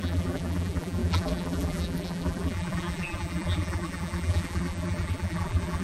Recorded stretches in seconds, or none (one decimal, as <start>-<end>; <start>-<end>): none

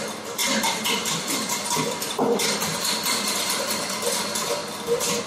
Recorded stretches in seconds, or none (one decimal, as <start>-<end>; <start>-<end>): 0.0-0.4; 3.6-5.3

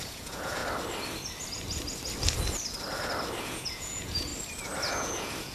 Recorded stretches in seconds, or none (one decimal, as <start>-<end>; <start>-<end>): 0.6-3.4; 4.3-4.9

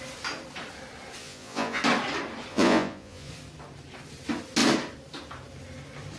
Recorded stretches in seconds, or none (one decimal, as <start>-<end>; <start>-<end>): 0.0-1.2; 1.8-2.5; 3.3-6.2

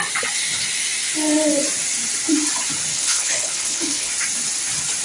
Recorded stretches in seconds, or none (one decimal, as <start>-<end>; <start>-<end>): 0.0-2.9; 4.1-5.0

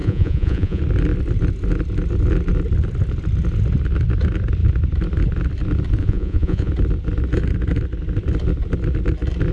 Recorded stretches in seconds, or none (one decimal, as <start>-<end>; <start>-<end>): 0.8-6.0; 6.7-9.5

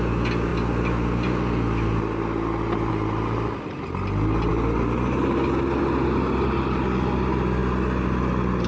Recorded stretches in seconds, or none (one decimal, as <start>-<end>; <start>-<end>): 0.0-8.7

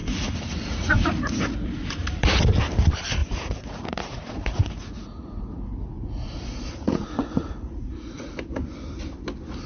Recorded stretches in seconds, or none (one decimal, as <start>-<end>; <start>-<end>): 2.4-3.2; 8.3-9.7